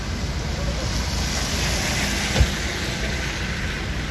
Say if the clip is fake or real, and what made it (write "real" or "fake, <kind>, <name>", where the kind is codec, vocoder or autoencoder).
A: real